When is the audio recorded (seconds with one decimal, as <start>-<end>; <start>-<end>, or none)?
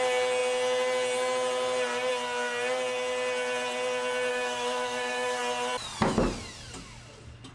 0.0-4.3; 5.4-7.5